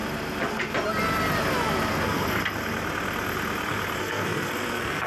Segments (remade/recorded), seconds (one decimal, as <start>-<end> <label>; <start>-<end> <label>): 0.0-1.9 recorded; 1.9-2.4 remade; 2.4-4.0 recorded; 4.0-5.1 remade